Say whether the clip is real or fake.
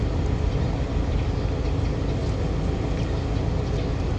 real